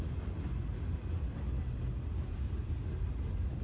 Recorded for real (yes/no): yes